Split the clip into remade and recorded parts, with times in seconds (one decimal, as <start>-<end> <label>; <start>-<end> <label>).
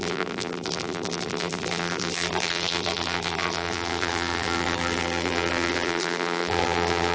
0.0-7.1 remade